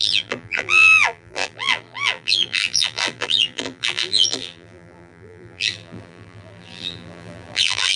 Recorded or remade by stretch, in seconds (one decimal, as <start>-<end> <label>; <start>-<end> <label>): 0.0-8.0 remade